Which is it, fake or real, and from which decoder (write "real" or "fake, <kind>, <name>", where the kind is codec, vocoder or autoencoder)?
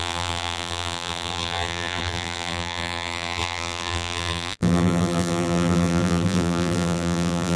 fake, vocoder, BigVGAN v2